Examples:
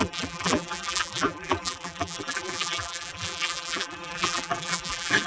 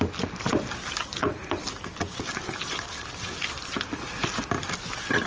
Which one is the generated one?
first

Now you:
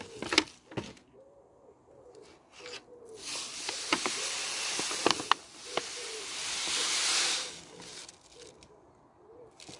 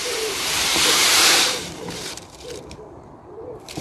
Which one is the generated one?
second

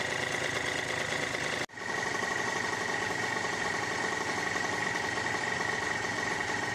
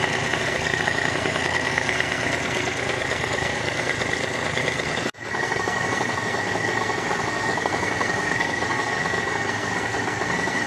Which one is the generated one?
second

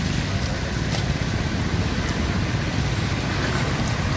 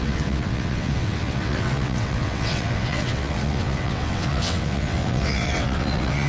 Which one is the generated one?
second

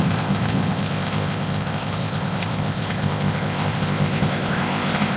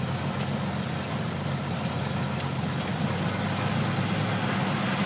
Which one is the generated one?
first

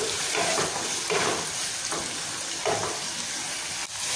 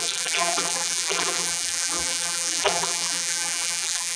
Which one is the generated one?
second